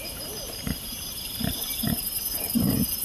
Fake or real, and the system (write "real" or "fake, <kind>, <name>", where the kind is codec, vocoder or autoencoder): fake, vocoder, BigVGAN v2